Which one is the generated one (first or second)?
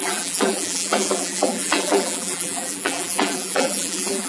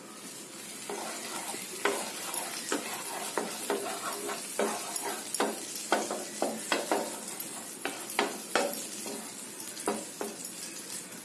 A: first